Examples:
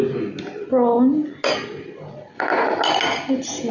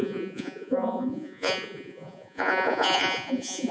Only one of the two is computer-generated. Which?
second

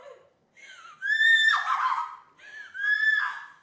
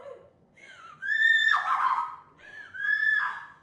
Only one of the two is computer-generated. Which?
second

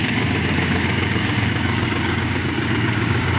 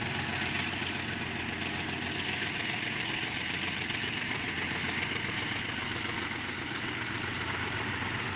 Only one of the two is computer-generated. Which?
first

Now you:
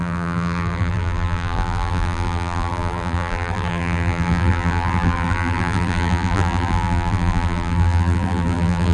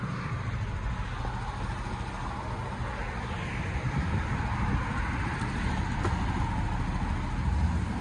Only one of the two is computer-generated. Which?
first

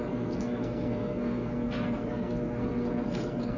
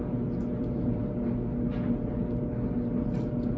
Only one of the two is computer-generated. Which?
first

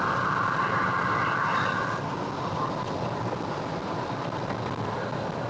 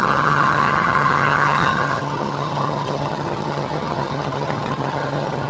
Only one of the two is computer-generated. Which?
second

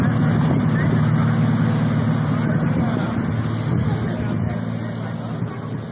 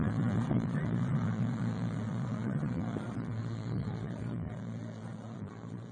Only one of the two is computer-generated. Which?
second